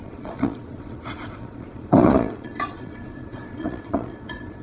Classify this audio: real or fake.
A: fake